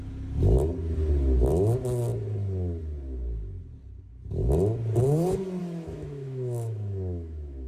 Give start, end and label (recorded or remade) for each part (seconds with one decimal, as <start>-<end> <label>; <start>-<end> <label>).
0.0-5.6 recorded; 5.6-7.7 remade